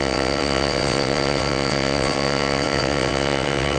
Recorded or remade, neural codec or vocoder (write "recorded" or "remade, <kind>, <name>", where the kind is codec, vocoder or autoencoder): remade, vocoder, WaveNeXt